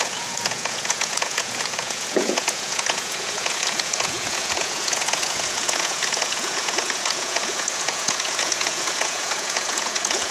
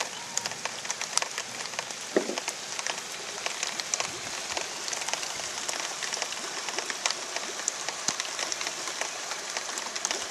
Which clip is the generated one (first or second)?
first